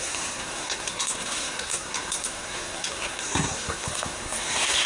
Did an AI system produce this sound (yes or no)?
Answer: yes